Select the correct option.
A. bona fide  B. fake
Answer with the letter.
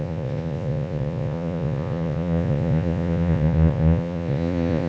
B